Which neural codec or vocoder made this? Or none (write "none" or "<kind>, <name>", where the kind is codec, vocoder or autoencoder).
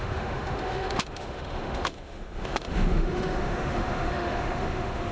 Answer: autoencoder, DAC-VAE